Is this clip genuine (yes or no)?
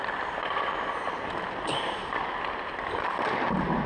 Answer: yes